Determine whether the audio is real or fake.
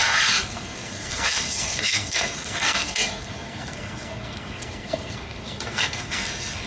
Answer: fake